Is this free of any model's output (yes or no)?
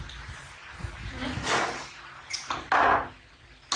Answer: yes